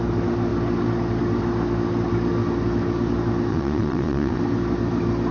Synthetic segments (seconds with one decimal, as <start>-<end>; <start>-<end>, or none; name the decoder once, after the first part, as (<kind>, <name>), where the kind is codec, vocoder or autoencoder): 3.5-4.4 (vocoder, Vocos)